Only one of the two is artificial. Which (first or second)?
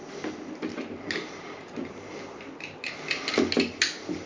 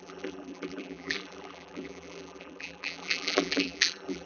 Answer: second